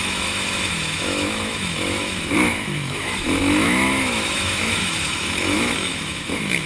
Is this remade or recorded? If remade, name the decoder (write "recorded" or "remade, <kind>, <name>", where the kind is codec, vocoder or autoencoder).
remade, autoencoder, DAC-VAE